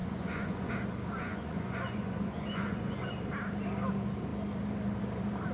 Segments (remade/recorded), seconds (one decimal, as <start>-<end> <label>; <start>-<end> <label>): 0.0-0.7 remade; 0.7-1.2 recorded; 1.2-3.1 remade; 3.1-5.5 recorded